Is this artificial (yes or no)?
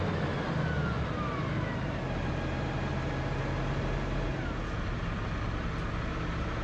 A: no